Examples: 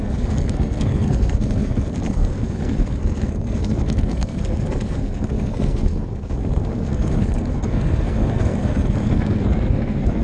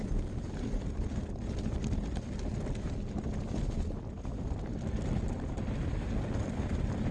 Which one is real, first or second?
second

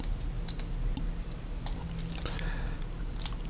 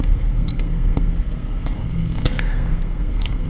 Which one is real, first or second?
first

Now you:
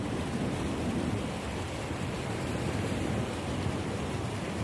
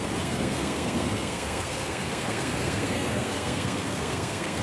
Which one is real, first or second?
first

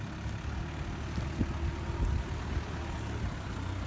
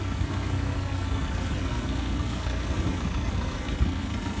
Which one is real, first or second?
first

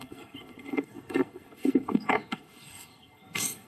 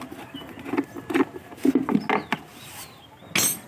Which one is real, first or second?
second